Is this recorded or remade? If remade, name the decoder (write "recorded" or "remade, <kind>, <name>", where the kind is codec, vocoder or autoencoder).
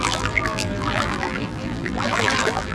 remade, vocoder, BigVGAN v2